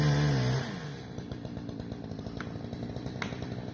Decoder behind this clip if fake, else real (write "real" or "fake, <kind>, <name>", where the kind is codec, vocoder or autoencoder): real